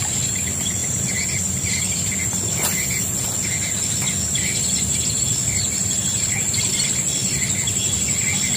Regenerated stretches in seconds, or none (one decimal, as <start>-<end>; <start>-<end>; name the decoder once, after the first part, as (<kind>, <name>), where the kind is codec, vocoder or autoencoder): 0.0-7.2 (vocoder, BigVGAN v2)